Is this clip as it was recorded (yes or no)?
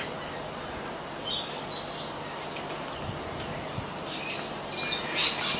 yes